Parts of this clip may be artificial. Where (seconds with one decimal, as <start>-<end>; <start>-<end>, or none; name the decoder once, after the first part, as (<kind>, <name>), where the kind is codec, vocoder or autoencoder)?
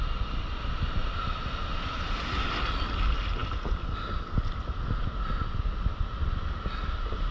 none